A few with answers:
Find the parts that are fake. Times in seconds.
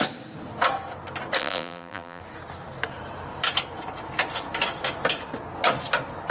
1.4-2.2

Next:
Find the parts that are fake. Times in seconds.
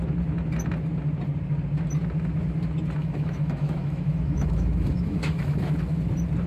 3.0-5.7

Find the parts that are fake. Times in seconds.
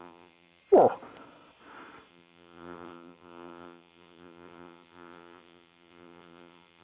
0.0-0.6; 2.1-6.8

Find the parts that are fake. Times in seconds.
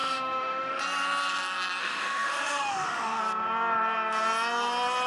0.0-0.8; 1.8-3.2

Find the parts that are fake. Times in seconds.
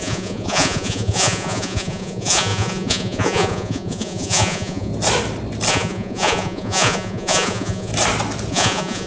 0.0-4.9; 5.7-7.9; 8.5-9.1